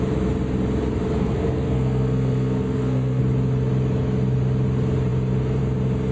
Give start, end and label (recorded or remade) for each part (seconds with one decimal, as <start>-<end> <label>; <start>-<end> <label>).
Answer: 0.0-1.2 recorded; 1.2-3.2 remade; 3.2-6.1 recorded